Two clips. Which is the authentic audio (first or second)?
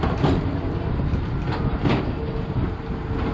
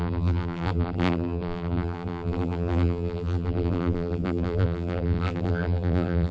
first